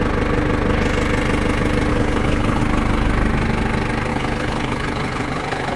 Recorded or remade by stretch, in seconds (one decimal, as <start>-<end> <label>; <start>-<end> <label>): 0.0-1.9 recorded; 1.9-2.6 remade; 2.6-4.1 recorded; 4.1-5.8 remade